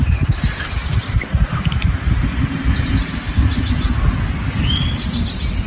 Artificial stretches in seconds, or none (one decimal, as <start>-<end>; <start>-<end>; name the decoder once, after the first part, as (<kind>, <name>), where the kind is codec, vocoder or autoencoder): 0.8-1.5 (vocoder, BigVGAN v2)